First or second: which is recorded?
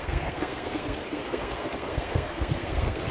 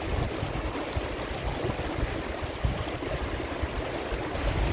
second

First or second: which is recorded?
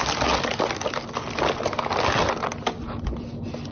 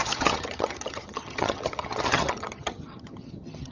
first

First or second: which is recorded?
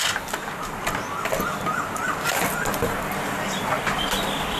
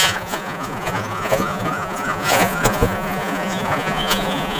first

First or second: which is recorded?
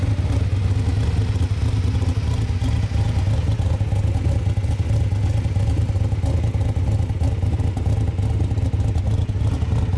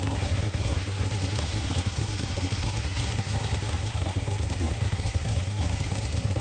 first